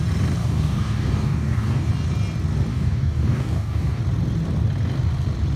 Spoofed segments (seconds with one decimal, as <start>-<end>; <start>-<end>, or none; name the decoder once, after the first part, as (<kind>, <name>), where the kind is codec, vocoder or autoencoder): 0.4-1.9 (codec, DAC); 2.7-4.0